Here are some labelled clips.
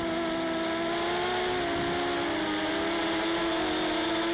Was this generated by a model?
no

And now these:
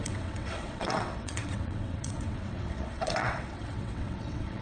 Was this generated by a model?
yes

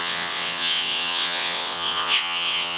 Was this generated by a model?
yes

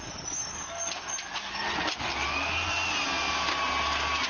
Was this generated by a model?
no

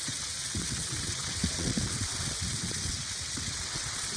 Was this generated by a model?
yes